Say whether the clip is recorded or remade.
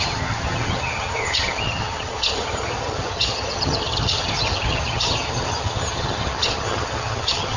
remade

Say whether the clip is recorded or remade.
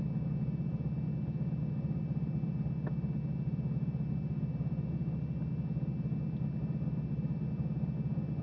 recorded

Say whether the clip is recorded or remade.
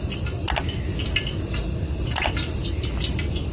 recorded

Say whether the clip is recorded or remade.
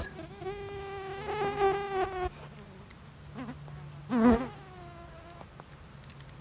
recorded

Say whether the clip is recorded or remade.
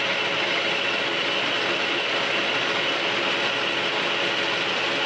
recorded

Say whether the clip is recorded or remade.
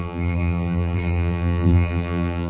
remade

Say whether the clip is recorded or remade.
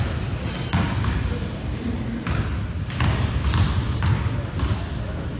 recorded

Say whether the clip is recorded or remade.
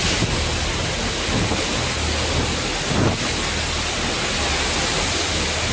recorded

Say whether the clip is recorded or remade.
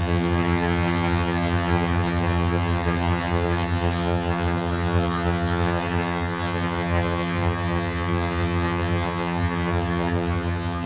remade